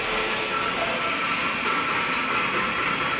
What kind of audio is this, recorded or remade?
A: recorded